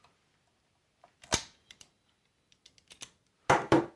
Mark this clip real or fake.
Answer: real